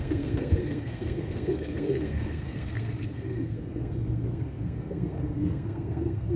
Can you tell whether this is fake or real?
fake